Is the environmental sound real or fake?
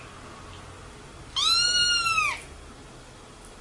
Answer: real